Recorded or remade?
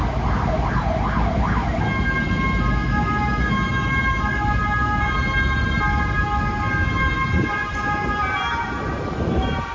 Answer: recorded